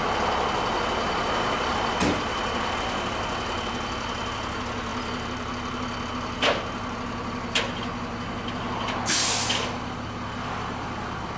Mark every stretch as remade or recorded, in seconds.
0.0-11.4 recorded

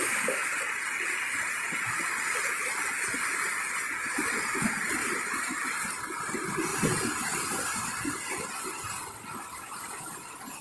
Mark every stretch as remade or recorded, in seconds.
0.0-5.0 recorded; 5.0-5.7 remade; 5.7-6.7 recorded; 6.7-8.5 remade; 8.5-10.6 recorded

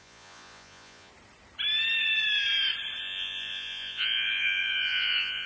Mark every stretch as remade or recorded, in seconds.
0.0-1.1 remade; 1.1-3.0 recorded; 3.0-5.5 remade

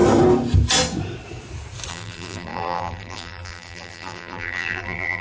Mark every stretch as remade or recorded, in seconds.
0.0-1.9 recorded; 1.9-5.2 remade

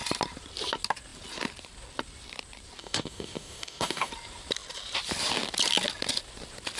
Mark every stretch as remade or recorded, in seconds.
0.0-2.8 recorded; 2.8-4.1 remade; 4.1-6.8 recorded

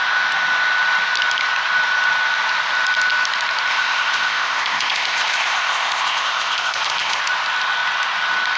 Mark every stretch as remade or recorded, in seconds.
0.0-3.7 recorded; 3.7-7.2 remade; 7.2-8.6 recorded